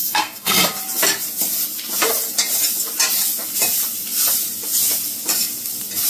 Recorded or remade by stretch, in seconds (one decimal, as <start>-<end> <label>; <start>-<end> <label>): 0.0-0.6 remade; 0.6-6.1 recorded